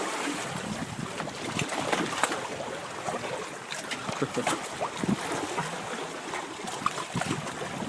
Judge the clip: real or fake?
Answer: real